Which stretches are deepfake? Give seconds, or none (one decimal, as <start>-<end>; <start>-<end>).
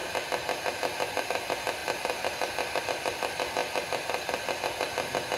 none